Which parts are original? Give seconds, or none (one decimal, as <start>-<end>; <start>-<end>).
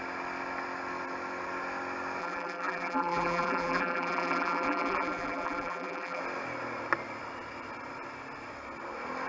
0.0-2.2; 6.2-9.3